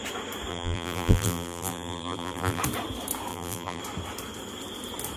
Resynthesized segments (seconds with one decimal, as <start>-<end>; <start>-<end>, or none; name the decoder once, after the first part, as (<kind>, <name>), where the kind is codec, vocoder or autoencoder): 0.5-2.6 (vocoder, BigVGAN v2); 3.3-3.8